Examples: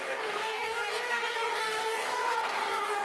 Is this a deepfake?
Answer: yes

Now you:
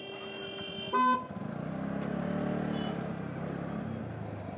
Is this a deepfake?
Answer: no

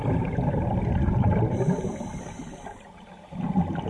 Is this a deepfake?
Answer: no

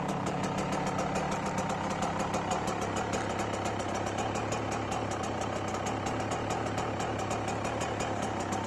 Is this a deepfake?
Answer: no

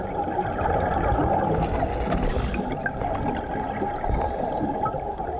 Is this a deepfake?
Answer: no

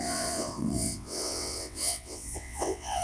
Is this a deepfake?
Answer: yes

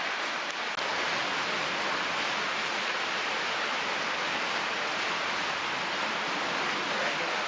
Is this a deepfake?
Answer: no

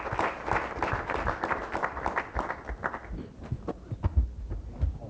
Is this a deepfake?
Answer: no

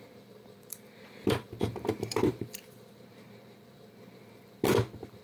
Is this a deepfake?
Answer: yes